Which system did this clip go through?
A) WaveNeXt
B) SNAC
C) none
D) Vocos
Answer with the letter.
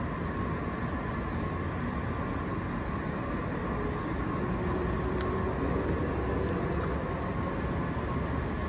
C